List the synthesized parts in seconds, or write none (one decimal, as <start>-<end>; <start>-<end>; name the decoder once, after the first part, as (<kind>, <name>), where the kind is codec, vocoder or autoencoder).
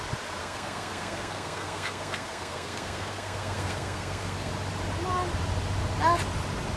0.4-4.5 (codec, SNAC)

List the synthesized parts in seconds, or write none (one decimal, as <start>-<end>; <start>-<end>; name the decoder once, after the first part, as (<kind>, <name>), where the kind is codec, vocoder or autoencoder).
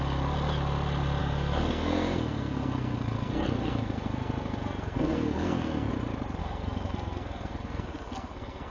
1.2-5.9 (codec, SNAC); 6.4-8.7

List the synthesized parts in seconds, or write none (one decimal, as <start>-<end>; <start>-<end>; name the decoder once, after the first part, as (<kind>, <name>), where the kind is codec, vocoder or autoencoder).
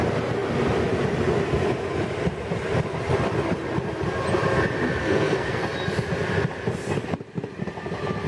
5.0-5.6 (codec, SNAC)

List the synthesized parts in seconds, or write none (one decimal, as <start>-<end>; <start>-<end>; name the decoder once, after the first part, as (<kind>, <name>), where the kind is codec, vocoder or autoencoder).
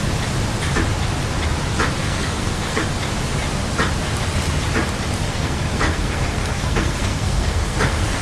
2.0-2.8 (codec, SNAC); 5.2-8.2